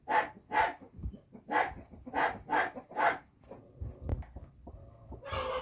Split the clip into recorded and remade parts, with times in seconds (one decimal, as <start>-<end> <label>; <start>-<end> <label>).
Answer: 0.0-5.6 recorded